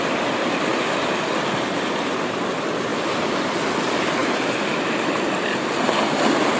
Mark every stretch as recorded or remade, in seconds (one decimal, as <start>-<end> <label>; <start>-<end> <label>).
0.0-0.7 recorded; 0.7-2.0 remade; 2.0-2.9 recorded; 2.9-3.6 remade; 3.6-6.6 recorded